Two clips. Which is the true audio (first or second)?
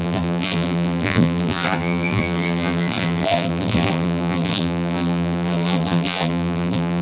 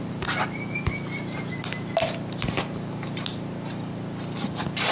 second